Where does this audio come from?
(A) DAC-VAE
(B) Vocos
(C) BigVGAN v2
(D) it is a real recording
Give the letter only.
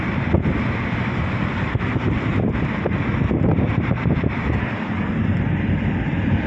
C